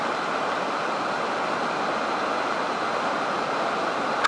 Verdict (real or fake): real